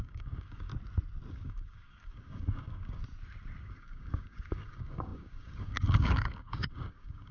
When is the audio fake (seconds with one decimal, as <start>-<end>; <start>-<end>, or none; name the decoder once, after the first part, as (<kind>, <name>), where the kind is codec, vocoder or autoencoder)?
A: 0.0-0.7 (codec, DAC); 1.3-3.0; 3.6-7.3